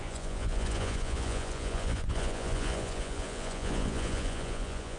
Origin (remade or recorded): remade